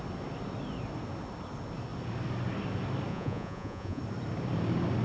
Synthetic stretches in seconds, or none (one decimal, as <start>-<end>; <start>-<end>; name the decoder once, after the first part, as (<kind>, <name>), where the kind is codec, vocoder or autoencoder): 3.1-4.0 (vocoder, Vocos)